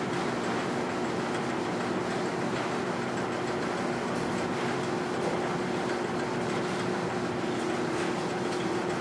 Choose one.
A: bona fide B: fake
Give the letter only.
A